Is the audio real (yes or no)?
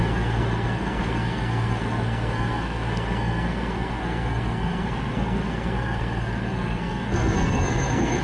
no